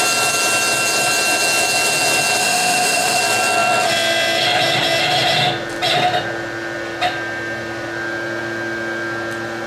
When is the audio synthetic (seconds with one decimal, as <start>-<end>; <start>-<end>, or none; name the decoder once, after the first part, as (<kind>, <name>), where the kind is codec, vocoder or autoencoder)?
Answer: 2.4-3.2 (autoencoder, DAC-VAE)